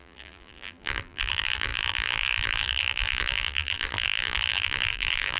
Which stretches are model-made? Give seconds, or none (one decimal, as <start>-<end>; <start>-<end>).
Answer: 0.0-5.4